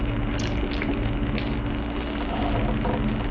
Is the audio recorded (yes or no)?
yes